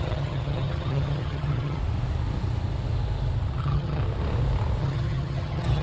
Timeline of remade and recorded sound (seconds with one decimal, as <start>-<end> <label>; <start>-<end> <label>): 0.0-1.8 remade; 1.8-3.6 recorded; 3.6-4.0 remade; 4.0-4.8 recorded; 4.8-5.8 remade